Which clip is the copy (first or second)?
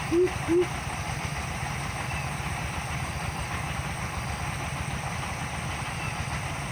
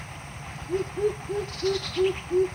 second